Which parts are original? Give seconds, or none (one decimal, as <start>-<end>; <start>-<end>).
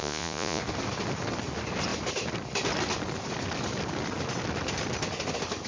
0.6-5.7